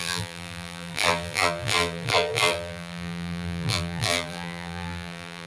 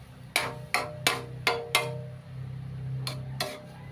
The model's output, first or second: first